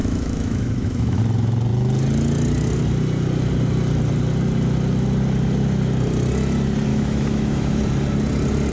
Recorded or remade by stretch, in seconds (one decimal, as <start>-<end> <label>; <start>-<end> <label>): 0.0-1.2 remade; 1.2-6.9 recorded; 6.9-7.8 remade; 7.8-8.7 recorded

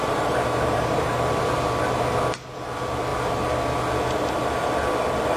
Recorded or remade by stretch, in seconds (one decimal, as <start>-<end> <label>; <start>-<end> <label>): 0.0-1.2 remade; 1.2-5.4 recorded